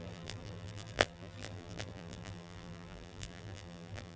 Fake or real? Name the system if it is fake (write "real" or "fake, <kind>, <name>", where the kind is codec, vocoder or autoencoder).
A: fake, vocoder, BigVGAN v2